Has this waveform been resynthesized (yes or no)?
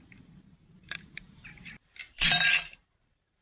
yes